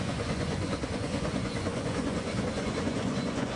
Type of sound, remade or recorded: remade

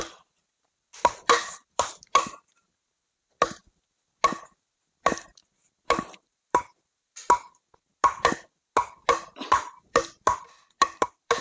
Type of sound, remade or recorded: recorded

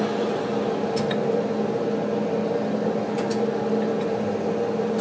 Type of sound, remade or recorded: recorded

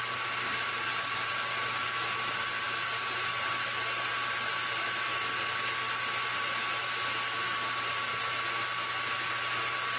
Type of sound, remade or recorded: recorded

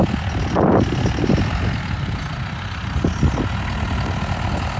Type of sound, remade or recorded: recorded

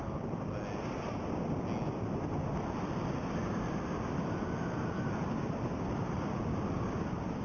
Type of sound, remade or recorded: recorded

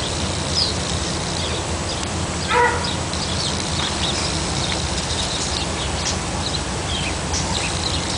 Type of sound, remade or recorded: recorded